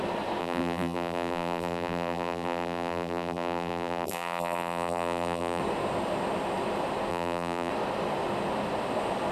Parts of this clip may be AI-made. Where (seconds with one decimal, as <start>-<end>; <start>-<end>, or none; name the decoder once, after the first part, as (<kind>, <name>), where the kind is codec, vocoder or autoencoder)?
0.4-5.6 (vocoder, BigVGAN v2); 7.1-7.7